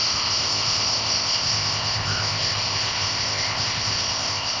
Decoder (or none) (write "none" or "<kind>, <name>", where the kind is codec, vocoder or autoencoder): codec, ZipCodec